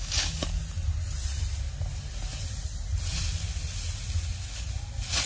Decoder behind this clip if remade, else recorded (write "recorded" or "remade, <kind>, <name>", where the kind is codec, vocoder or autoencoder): recorded